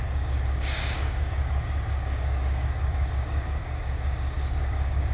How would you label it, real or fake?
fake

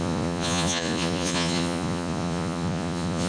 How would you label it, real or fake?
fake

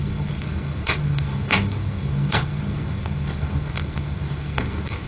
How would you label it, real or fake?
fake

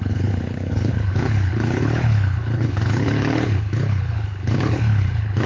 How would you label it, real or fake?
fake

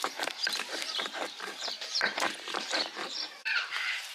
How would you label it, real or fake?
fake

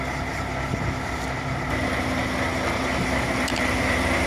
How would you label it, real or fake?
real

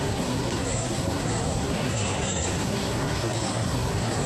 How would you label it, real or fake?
fake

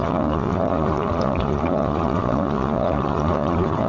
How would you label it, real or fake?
fake